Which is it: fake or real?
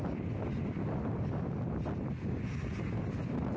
real